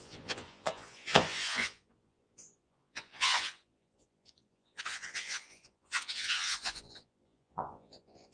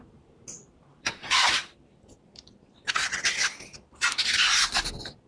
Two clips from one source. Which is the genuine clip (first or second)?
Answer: second